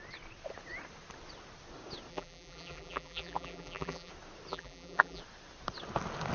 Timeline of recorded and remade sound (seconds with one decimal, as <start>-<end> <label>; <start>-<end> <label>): 0.0-2.1 recorded; 2.1-4.1 remade; 4.1-4.5 recorded; 4.5-5.2 remade; 5.2-6.3 recorded